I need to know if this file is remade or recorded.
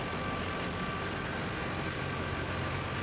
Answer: recorded